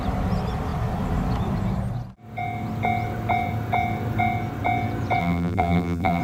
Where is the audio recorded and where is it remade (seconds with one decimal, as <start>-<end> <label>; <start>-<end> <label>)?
0.0-5.2 recorded; 5.2-6.2 remade